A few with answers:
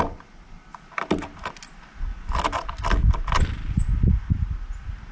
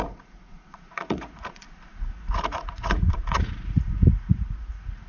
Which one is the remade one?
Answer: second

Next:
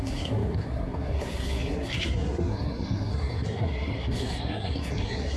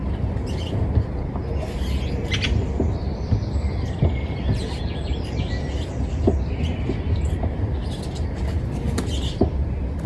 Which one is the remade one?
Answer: first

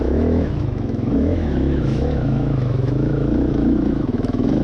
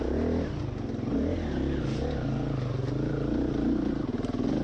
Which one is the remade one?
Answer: first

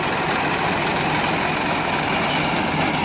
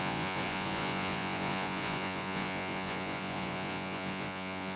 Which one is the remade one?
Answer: second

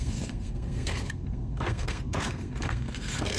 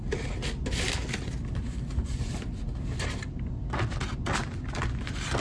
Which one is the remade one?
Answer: first